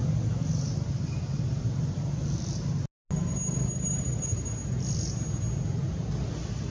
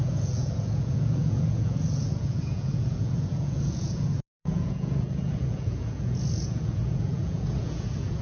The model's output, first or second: second